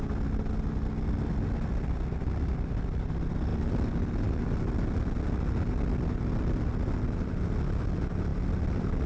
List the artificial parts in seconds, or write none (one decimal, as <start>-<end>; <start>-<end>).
none